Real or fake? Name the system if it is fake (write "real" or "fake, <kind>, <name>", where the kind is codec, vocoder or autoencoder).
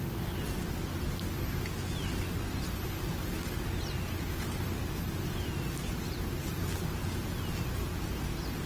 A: real